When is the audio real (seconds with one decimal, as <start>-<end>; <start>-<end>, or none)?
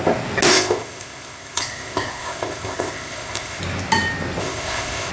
0.0-0.5; 3.6-4.4